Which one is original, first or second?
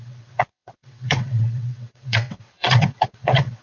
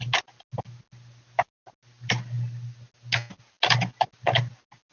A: second